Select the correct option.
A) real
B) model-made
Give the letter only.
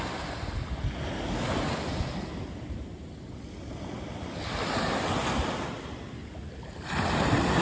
A